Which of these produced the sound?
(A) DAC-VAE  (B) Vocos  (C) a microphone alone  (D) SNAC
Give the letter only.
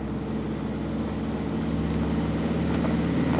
C